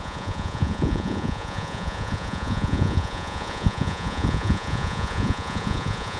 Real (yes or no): no